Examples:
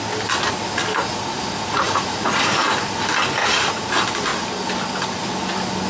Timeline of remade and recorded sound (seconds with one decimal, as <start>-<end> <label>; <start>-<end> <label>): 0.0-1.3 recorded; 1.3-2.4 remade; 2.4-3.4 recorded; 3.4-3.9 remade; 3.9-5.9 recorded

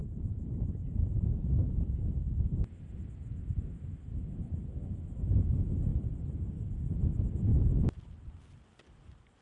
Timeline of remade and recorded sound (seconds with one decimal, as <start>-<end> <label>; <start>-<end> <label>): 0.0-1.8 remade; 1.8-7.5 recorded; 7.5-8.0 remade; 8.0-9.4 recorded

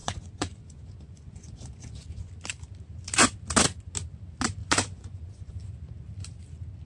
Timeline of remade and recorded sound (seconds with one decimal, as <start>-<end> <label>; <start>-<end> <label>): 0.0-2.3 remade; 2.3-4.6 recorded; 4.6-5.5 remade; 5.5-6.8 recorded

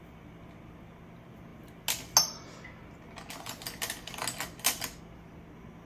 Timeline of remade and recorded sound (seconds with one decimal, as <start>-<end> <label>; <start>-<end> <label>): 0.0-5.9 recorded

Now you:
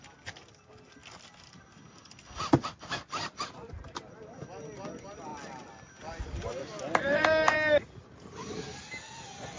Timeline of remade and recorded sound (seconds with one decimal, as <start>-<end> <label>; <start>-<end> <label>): 0.0-9.6 recorded

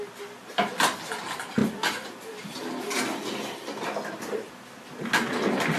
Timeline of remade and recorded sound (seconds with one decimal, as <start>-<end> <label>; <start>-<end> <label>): 0.0-5.8 recorded

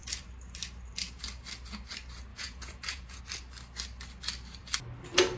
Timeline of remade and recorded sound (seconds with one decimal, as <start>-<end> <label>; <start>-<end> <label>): 0.0-2.3 recorded; 2.3-3.2 remade; 3.2-5.4 recorded

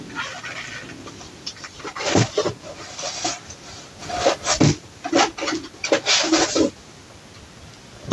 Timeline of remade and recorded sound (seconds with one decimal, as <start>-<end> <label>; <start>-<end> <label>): 0.0-8.1 recorded